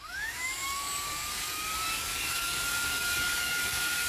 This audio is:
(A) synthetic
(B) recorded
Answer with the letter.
A